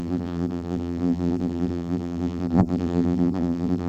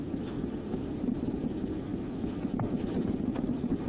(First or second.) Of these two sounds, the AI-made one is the first